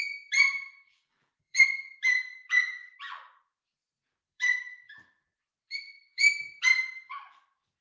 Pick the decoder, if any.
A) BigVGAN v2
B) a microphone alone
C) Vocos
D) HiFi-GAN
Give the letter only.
A